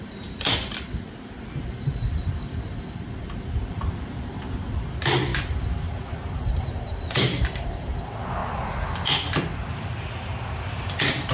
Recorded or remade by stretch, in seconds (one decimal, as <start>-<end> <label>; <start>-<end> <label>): 0.0-5.3 remade; 5.3-7.0 recorded; 7.0-8.4 remade; 8.4-10.8 recorded; 10.8-11.3 remade